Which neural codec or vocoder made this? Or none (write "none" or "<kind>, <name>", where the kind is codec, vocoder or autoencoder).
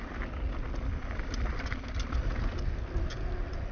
none